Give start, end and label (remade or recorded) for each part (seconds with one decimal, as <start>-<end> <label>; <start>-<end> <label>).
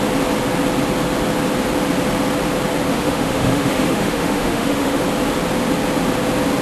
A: 0.0-2.9 recorded; 2.9-5.0 remade; 5.0-6.6 recorded